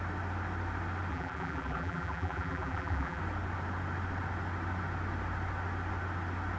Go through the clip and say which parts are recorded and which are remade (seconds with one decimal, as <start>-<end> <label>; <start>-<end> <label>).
0.0-1.1 recorded; 1.1-3.2 remade; 3.2-6.6 recorded